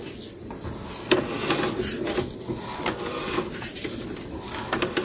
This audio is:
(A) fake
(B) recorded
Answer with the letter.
B